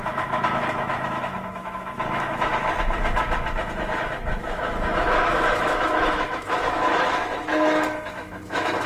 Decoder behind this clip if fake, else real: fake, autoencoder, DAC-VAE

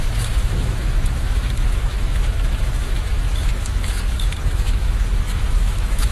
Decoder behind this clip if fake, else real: fake, autoencoder, DAC-VAE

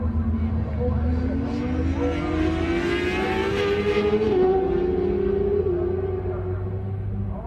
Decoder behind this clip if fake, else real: real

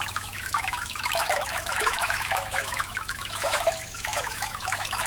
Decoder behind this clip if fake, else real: fake, autoencoder, DAC-VAE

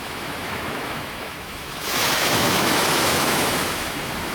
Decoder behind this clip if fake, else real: fake, autoencoder, DAC-VAE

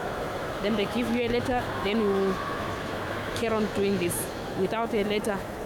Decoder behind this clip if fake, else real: fake, autoencoder, DAC-VAE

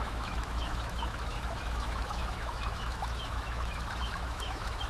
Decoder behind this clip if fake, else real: fake, autoencoder, DAC-VAE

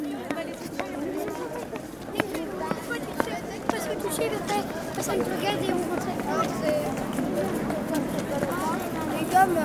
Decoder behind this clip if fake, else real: real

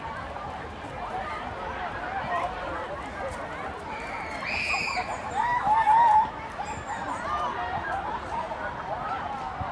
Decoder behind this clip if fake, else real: real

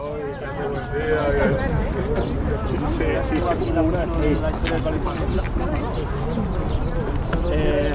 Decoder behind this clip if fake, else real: real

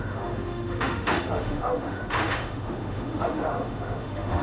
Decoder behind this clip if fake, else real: fake, autoencoder, DAC-VAE